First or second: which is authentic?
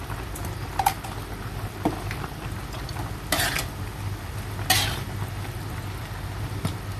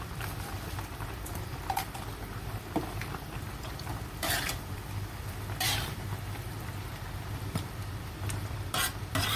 first